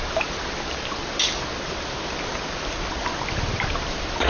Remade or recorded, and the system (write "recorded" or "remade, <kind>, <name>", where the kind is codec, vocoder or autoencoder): recorded